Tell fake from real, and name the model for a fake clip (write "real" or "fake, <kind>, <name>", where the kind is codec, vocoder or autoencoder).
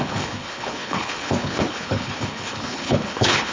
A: fake, codec, HILCodec